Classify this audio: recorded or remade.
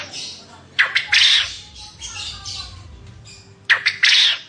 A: recorded